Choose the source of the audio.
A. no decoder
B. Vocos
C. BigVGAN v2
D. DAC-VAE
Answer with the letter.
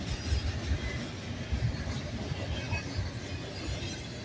A